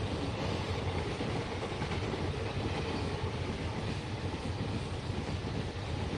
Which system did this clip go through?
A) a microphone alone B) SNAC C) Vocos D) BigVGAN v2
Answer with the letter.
A